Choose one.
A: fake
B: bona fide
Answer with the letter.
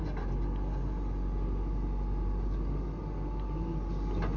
B